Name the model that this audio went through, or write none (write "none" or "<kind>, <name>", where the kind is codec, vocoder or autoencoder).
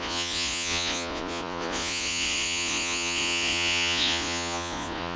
vocoder, Vocos